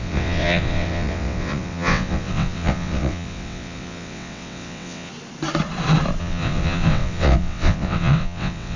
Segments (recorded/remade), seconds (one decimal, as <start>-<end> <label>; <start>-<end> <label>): 0.0-5.1 remade; 5.1-6.2 recorded; 6.2-8.8 remade